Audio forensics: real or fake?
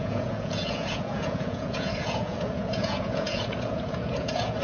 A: fake